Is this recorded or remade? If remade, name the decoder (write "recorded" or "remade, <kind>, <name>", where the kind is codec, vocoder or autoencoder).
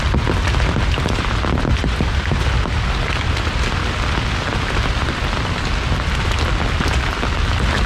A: recorded